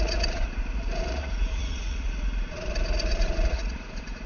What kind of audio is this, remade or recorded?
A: remade